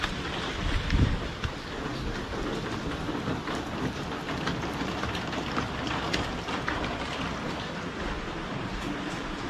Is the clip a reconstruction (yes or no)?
yes